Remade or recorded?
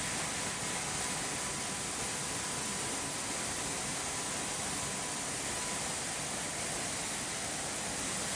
recorded